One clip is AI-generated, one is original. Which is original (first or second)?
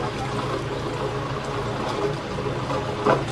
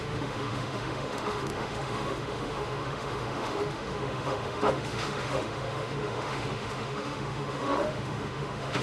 first